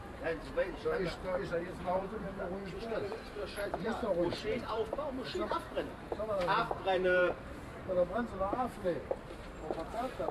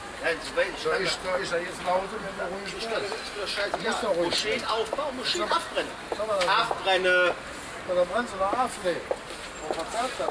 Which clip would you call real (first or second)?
second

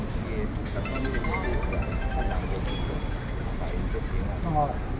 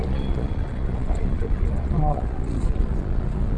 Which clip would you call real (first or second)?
first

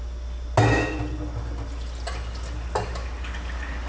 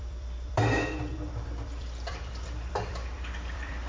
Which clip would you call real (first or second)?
first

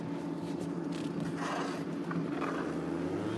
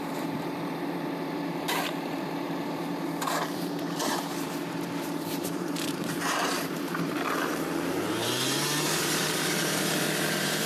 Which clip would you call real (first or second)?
first